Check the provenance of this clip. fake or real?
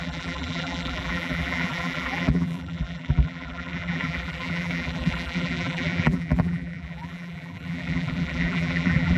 fake